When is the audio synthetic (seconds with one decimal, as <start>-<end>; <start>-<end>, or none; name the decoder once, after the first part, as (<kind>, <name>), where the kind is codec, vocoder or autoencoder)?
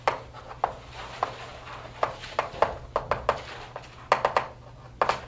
1.5-2.8 (vocoder, BigVGAN v2)